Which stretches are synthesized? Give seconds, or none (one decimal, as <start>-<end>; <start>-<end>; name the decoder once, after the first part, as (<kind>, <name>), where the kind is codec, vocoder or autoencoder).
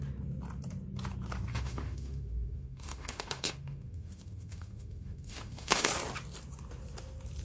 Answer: 1.5-5.9 (autoencoder, DAC-VAE)